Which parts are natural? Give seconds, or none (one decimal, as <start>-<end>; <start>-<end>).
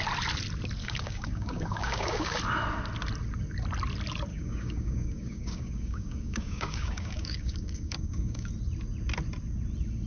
0.0-0.8; 2.4-4.3; 8.5-10.1